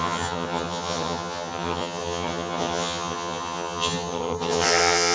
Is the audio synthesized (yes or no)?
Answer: yes